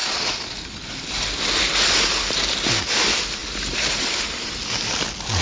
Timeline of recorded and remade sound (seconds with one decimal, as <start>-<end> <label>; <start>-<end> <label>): 0.0-3.4 recorded; 3.4-4.1 remade; 4.1-5.4 recorded